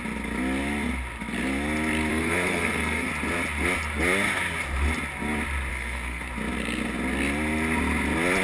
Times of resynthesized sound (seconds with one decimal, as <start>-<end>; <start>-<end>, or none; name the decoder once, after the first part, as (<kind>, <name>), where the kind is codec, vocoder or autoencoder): 2.1-3.1 (codec, SNAC); 5.7-6.2